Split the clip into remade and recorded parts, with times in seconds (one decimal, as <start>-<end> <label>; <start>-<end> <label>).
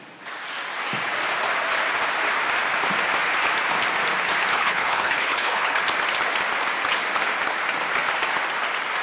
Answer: 0.0-4.5 recorded; 4.5-5.8 remade; 5.8-9.0 recorded